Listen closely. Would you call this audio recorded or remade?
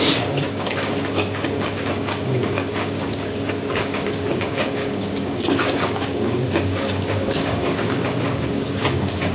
remade